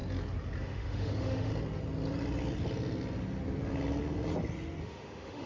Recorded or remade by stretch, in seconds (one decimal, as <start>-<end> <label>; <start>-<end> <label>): 0.0-0.6 recorded; 0.6-1.5 remade; 1.5-4.8 recorded; 4.8-5.5 remade